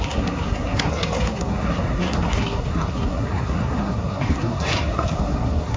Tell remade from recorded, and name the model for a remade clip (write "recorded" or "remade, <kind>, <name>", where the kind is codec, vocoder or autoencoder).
remade, codec, SNAC